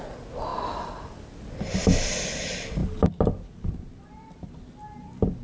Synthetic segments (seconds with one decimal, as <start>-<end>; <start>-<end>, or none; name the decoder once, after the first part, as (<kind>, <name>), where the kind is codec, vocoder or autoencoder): none